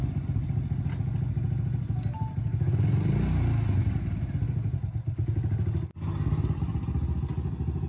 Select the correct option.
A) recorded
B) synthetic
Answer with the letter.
A